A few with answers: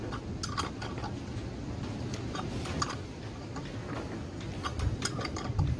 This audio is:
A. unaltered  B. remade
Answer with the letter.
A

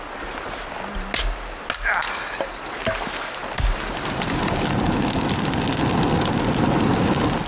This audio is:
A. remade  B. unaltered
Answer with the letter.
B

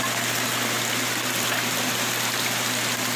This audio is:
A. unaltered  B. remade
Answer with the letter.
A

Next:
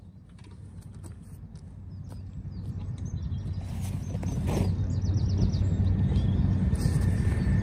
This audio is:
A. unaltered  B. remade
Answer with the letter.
A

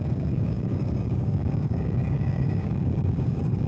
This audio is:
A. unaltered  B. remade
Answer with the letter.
B